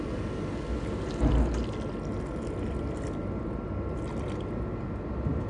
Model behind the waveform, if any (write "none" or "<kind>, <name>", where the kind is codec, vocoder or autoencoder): none